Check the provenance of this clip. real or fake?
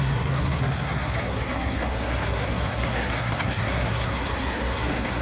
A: fake